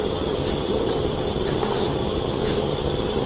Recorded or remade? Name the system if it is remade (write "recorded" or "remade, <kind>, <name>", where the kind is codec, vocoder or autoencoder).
remade, vocoder, HiFi-GAN